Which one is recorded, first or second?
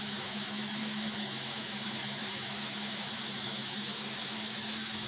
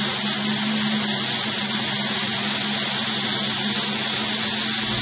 second